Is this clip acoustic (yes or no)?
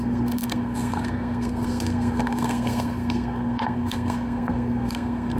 no